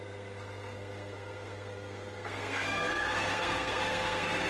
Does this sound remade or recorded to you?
remade